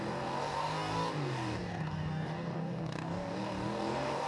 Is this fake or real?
fake